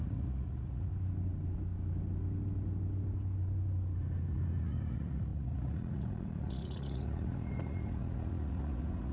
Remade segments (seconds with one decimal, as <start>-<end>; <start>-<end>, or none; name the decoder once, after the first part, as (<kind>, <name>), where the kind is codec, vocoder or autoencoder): 0.0-0.9 (vocoder, Vocos); 4.3-9.1

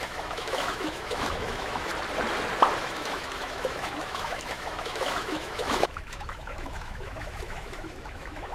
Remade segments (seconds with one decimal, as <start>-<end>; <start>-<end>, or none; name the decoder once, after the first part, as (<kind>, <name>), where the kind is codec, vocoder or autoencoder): 0.0-1.9 (autoencoder, DAC-VAE); 2.8-8.5